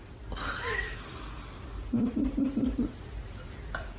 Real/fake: real